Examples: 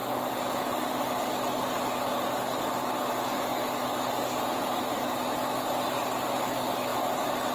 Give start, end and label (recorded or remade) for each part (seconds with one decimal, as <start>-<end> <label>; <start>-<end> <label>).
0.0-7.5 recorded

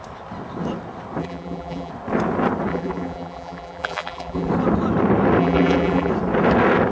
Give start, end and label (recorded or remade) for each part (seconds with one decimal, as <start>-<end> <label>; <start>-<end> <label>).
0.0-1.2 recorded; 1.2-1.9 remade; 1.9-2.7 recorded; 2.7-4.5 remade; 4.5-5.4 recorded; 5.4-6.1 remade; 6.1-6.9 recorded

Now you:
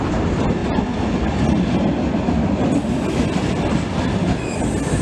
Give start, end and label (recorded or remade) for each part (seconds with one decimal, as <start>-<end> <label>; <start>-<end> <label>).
0.0-5.0 recorded

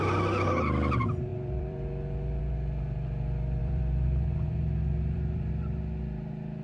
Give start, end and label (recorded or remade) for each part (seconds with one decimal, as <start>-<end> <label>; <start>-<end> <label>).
0.0-1.3 recorded; 1.3-2.4 remade; 2.4-3.6 recorded; 3.6-5.5 remade; 5.5-6.6 recorded

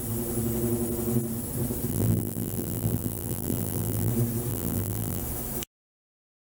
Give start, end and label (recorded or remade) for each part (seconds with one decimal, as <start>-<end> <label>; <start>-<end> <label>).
0.0-1.9 recorded; 1.9-4.1 remade; 4.1-4.5 recorded; 4.5-5.2 remade; 5.2-6.5 recorded

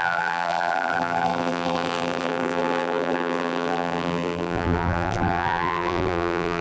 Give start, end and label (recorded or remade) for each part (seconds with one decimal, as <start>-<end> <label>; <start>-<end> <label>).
0.0-6.6 remade